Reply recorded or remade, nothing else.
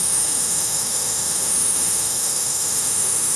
remade